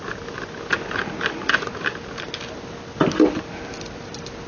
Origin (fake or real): real